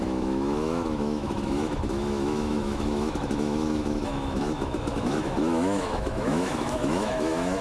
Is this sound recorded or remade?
remade